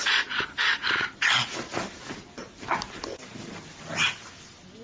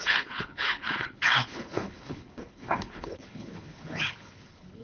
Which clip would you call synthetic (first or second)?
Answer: second